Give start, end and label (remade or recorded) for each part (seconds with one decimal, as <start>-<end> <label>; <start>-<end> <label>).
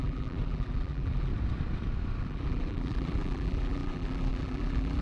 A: 0.0-1.3 remade; 1.3-2.2 recorded; 2.2-5.0 remade